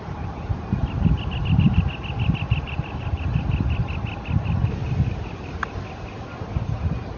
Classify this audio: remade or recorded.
recorded